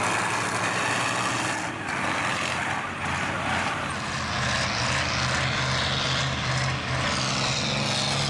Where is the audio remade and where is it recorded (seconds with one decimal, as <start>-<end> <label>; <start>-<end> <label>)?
0.0-2.3 recorded; 2.3-3.9 remade; 3.9-8.3 recorded